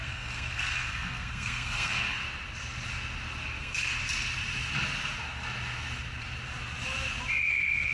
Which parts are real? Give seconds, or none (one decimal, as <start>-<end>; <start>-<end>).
2.2-3.6; 4.0-7.5